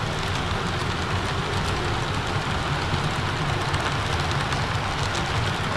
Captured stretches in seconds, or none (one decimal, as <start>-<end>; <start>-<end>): 0.0-5.8

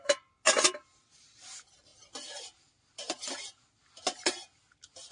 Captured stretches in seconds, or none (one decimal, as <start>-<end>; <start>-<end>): 0.0-5.1

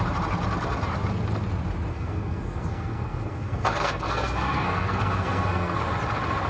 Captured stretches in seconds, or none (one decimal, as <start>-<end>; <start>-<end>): 0.0-1.9; 5.8-6.5

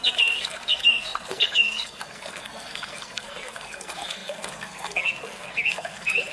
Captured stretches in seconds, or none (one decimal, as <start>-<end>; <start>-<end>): none

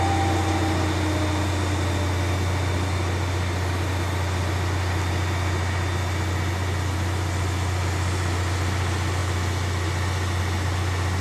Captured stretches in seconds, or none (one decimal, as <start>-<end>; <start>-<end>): 0.0-11.2

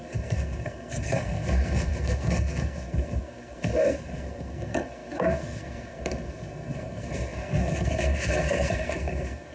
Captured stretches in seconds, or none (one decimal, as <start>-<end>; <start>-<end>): none